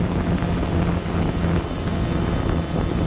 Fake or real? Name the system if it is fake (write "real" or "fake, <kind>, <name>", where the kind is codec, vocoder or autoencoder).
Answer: real